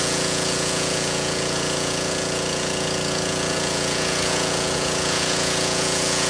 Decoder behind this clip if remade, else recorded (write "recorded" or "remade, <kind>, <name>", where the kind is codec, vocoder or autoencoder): remade, vocoder, Vocos